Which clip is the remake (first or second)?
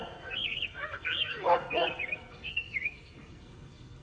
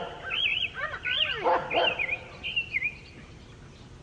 first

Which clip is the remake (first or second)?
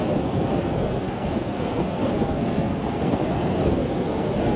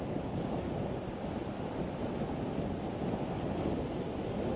first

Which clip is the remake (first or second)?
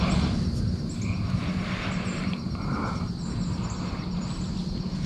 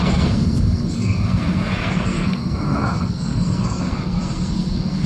second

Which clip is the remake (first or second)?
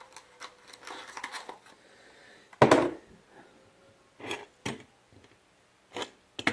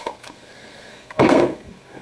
second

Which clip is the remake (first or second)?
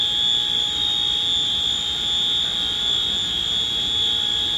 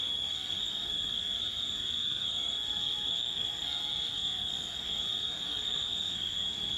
second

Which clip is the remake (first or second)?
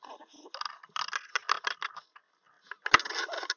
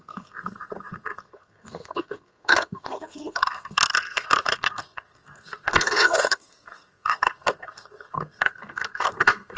second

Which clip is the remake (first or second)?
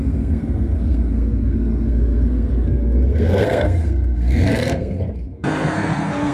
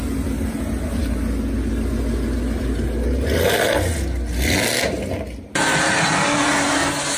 first